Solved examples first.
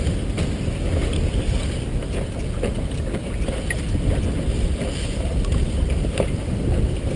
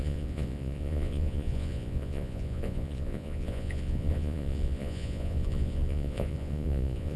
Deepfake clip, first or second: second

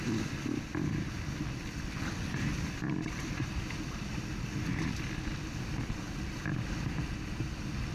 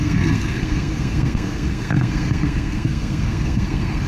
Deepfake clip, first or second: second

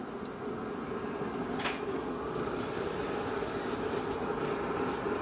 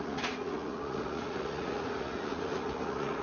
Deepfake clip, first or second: second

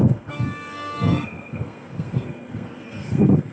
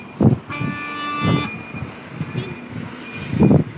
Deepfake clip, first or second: first